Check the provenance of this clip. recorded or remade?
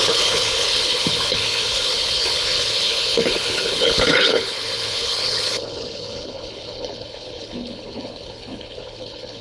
remade